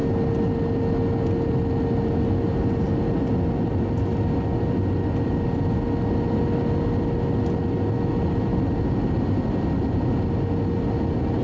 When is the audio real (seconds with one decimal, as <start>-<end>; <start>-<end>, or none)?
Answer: 0.0-11.4